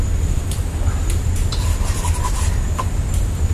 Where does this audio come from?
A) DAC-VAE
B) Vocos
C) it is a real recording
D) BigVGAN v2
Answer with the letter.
C